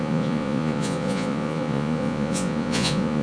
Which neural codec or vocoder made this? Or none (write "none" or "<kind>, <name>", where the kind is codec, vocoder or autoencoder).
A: vocoder, Vocos